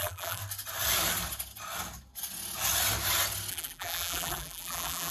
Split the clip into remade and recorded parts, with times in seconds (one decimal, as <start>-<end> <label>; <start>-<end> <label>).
0.0-0.4 remade; 0.4-3.5 recorded; 3.5-5.1 remade